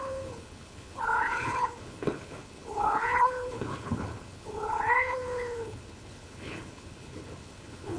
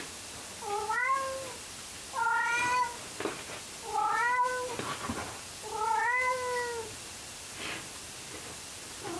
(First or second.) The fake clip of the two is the first